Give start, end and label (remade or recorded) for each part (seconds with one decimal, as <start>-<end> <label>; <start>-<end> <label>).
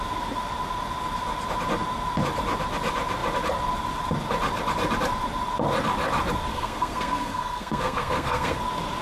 0.0-6.5 recorded; 6.5-8.6 remade; 8.6-9.0 recorded